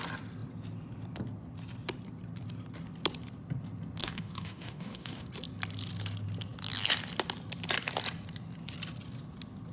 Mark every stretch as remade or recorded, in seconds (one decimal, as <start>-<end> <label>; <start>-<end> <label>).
0.0-4.0 recorded; 4.0-5.3 remade; 5.3-9.7 recorded